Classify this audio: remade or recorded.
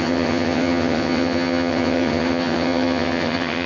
remade